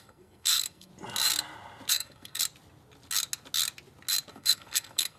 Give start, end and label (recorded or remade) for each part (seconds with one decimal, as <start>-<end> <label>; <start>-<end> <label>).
0.0-0.9 remade; 0.9-1.9 recorded; 1.9-2.4 remade; 2.4-4.3 recorded; 4.3-5.2 remade